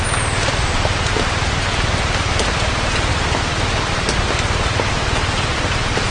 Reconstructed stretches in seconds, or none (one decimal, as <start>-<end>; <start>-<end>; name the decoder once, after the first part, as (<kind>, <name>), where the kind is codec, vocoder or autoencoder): none